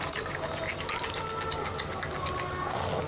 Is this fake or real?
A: real